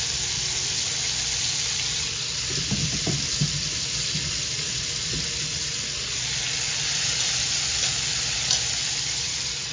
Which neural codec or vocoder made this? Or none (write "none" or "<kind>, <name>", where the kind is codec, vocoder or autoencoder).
none